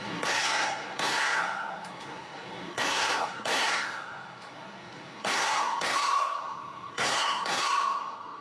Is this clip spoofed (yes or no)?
yes